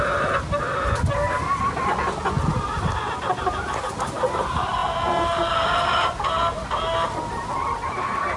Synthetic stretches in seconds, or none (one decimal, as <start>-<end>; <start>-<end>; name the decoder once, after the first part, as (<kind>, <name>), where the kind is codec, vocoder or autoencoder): none